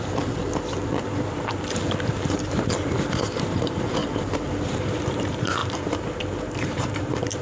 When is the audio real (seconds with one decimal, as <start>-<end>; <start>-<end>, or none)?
0.4-1.5; 4.0-4.5